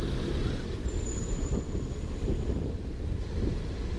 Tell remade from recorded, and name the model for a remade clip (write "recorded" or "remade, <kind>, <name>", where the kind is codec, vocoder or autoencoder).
recorded